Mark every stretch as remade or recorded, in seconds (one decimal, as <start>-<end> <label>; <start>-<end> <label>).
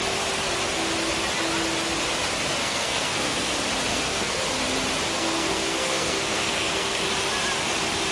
0.0-2.6 recorded; 2.6-3.5 remade; 3.5-3.9 recorded; 3.9-4.4 remade; 4.4-5.1 recorded; 5.1-7.1 remade; 7.1-8.1 recorded